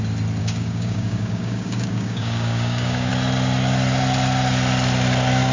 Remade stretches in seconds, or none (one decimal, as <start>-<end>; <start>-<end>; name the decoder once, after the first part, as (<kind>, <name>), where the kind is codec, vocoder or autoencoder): 0.4-3.1 (codec, DAC)